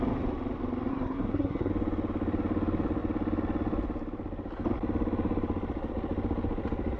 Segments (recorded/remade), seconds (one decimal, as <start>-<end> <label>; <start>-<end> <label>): 0.0-0.9 recorded; 0.9-1.7 remade; 1.7-7.0 recorded

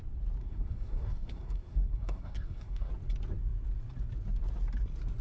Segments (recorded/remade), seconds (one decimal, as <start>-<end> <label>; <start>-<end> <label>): 0.0-0.4 recorded; 0.4-2.9 remade; 2.9-5.2 recorded